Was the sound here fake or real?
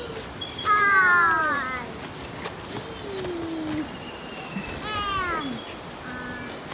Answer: real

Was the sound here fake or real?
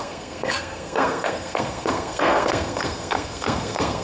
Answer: fake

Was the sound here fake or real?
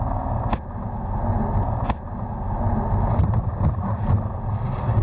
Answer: real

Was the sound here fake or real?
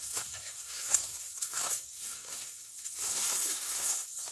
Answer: fake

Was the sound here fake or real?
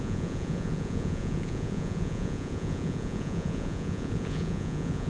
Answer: fake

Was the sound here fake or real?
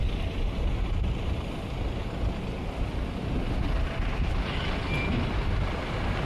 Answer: real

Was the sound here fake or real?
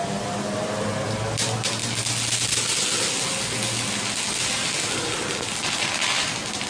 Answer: real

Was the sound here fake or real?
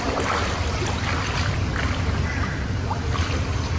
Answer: real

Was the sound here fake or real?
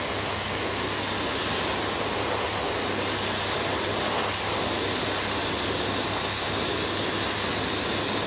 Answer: real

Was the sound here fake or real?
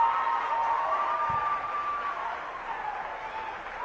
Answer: real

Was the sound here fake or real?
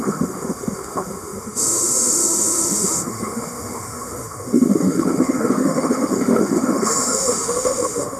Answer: fake